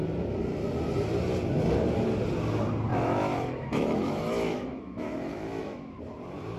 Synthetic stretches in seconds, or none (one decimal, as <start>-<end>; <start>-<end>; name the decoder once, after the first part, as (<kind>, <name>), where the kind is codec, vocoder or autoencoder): 2.9-6.0 (autoencoder, DAC-VAE)